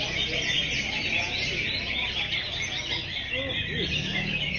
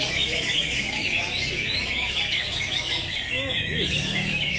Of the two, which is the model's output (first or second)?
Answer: second